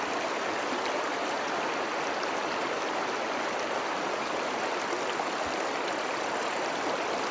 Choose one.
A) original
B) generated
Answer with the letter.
A